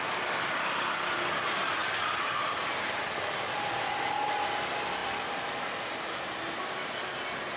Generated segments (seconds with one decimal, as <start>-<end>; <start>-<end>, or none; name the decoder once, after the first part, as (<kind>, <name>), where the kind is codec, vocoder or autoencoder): none